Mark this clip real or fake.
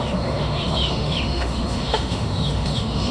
fake